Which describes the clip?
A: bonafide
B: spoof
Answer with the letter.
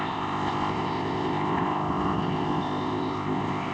B